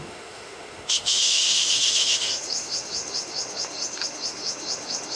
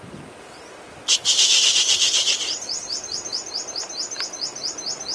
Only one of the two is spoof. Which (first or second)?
first